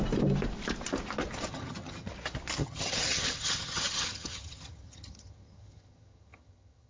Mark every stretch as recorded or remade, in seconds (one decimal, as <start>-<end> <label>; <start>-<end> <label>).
0.0-1.5 recorded; 1.5-2.1 remade; 2.1-2.6 recorded; 2.6-6.9 remade